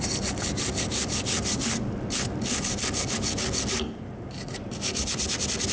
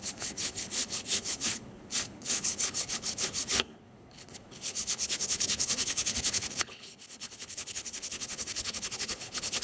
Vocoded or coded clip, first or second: second